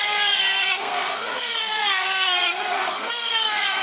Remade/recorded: remade